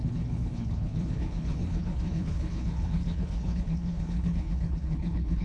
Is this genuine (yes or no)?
no